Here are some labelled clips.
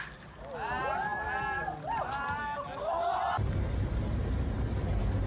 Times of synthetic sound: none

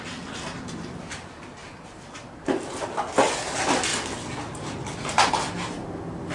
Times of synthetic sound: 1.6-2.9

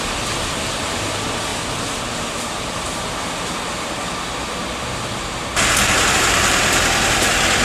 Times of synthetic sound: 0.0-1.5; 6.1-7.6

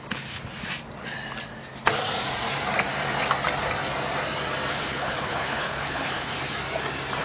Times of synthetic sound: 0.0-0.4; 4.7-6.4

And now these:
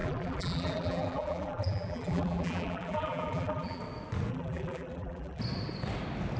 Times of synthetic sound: 0.0-3.8; 4.3-5.4

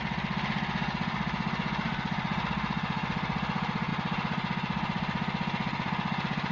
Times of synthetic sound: none

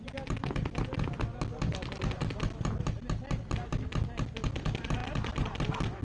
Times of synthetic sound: none

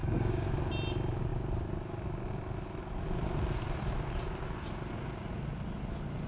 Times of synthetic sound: 0.0-0.5